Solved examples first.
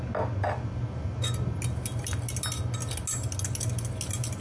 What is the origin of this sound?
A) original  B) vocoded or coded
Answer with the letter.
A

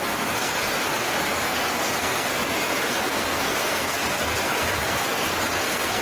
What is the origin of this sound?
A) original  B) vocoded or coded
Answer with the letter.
B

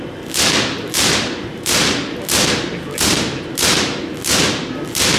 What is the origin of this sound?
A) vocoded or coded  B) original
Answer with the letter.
B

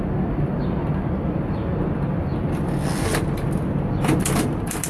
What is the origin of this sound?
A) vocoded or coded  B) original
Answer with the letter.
B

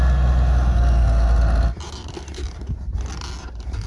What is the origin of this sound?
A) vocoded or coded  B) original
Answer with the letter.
B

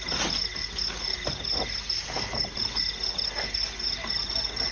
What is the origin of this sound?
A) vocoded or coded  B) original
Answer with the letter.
B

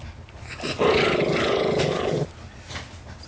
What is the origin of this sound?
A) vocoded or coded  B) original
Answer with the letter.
B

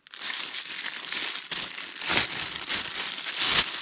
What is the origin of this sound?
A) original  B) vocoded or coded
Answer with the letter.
A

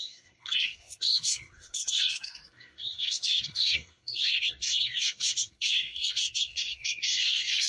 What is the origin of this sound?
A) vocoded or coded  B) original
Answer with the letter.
A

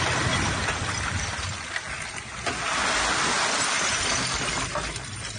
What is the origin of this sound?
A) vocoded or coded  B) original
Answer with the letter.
B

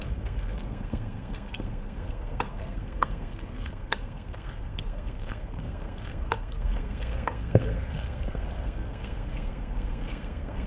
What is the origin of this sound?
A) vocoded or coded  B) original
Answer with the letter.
A